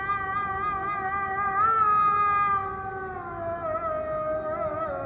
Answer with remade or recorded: recorded